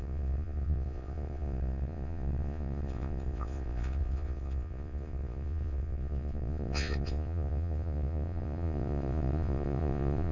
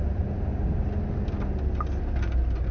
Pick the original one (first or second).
second